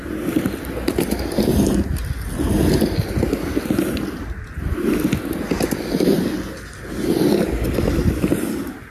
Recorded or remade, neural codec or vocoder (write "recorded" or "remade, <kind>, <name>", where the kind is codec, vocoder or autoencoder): recorded